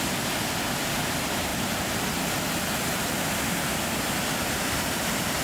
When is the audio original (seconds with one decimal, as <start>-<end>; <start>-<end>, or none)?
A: 0.0-1.5; 2.3-3.7